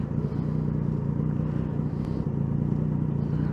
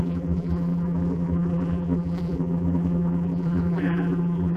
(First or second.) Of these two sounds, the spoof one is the second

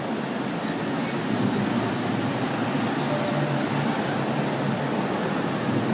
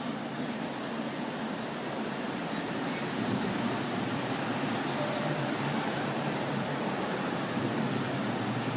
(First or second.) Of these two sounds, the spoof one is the second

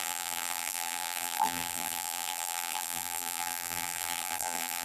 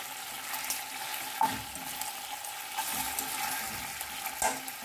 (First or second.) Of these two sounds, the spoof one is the first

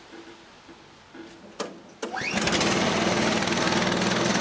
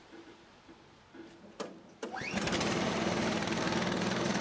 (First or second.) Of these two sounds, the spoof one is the second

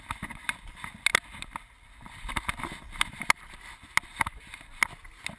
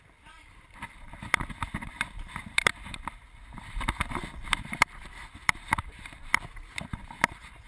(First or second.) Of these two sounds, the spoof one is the second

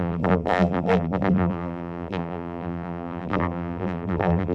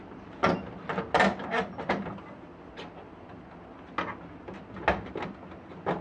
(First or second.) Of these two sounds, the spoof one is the first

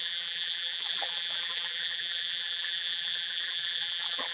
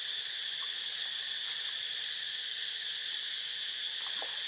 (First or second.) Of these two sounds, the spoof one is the first